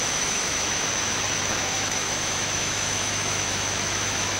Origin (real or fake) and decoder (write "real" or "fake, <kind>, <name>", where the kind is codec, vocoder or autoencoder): fake, autoencoder, DAC-VAE